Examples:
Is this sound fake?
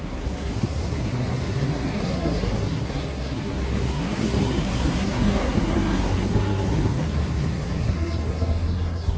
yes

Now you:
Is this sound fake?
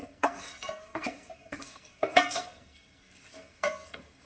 yes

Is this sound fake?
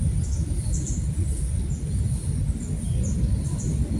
no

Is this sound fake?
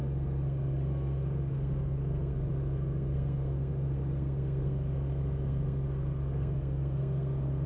yes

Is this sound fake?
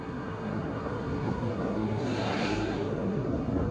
yes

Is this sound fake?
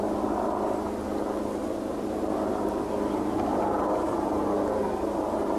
no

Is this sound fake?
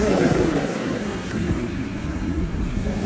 yes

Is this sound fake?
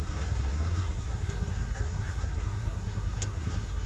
yes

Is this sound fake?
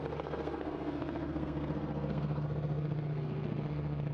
yes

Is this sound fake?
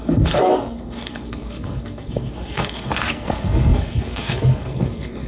yes